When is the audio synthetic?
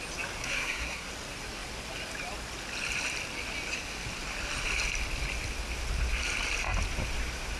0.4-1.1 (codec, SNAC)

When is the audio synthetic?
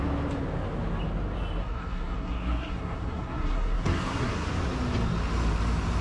1.6-4.5 (codec, SNAC)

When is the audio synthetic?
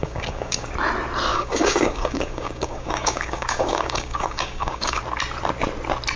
0.0-0.7 (codec, DAC); 1.3-5.0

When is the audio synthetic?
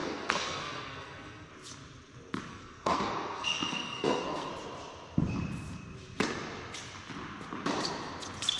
0.0-1.5 (codec, SNAC); 2.5-4.5